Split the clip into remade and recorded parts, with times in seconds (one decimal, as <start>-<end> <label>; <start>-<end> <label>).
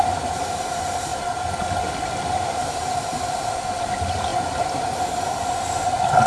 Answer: 0.0-1.1 recorded; 1.1-1.9 remade; 1.9-4.3 recorded; 4.3-5.0 remade; 5.0-6.3 recorded